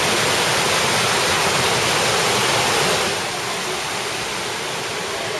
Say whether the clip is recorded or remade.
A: recorded